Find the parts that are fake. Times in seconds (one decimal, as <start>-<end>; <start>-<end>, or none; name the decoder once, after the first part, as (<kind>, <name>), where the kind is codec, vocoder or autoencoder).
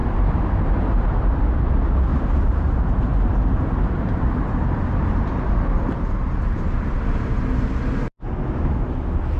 0.0-1.4 (vocoder, BigVGAN v2); 2.1-5.5